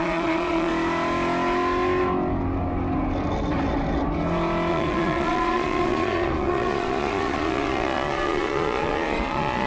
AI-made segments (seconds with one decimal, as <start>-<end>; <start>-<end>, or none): 0.0-0.7; 4.7-9.7